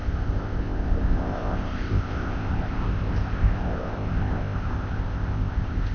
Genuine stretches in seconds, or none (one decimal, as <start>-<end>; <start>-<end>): none